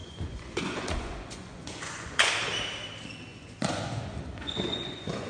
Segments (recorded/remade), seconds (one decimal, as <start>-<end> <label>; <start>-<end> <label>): 0.0-2.3 remade; 2.3-3.3 recorded; 3.3-5.3 remade